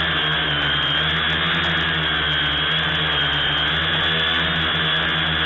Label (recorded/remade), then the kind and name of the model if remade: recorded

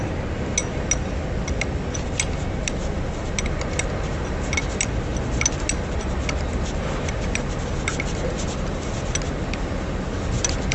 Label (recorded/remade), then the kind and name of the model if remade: recorded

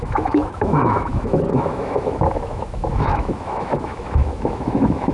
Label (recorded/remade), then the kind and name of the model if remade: remade, autoencoder, DAC-VAE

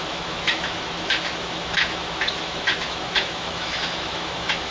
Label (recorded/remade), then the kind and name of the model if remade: remade, autoencoder, DAC-VAE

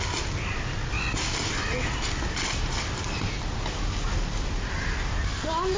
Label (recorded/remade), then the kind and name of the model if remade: recorded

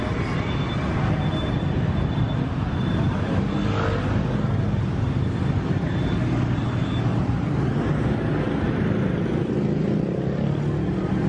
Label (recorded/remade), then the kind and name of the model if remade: recorded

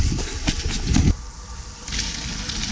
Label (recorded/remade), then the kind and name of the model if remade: recorded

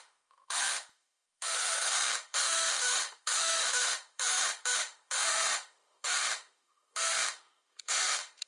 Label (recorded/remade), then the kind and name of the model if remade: remade, autoencoder, DAC-VAE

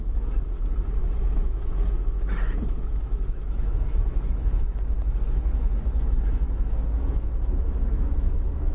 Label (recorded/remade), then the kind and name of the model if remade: remade, autoencoder, DAC-VAE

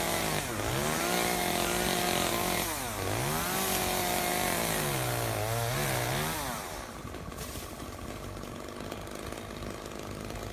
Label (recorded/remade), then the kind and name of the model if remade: recorded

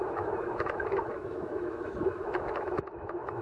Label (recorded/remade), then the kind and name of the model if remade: remade, autoencoder, DAC-VAE